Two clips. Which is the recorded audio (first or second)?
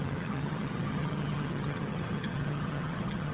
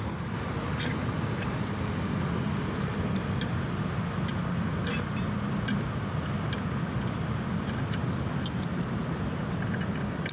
second